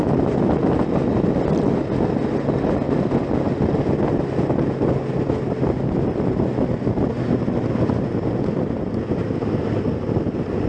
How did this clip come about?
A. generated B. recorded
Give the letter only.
B